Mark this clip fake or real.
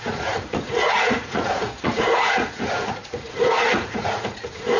fake